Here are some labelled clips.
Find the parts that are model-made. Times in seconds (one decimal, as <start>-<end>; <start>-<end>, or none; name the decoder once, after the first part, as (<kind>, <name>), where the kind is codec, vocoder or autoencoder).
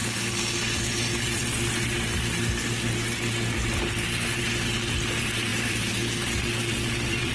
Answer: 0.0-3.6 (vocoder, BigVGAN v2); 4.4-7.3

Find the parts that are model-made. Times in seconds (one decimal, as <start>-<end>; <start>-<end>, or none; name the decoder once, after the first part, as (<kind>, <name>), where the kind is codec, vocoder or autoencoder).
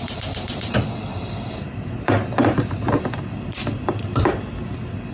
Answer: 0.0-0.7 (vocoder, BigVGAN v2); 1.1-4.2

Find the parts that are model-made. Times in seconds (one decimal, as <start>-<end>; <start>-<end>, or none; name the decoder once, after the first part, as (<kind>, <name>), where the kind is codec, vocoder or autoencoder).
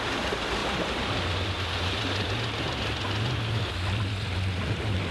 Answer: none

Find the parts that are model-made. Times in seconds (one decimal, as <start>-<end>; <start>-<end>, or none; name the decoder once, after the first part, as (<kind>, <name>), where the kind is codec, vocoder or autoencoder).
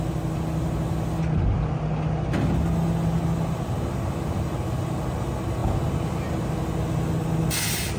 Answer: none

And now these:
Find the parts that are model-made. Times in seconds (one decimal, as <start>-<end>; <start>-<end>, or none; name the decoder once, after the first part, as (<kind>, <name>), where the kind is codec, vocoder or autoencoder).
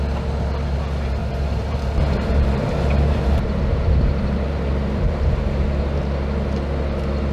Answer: 1.2-5.4 (vocoder, BigVGAN v2)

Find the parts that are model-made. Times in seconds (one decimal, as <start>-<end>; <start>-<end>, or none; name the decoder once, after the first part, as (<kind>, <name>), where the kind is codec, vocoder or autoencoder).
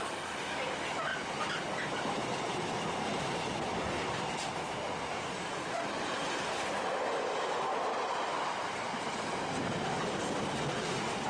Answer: 1.1-3.2 (vocoder, BigVGAN v2); 8.3-9.9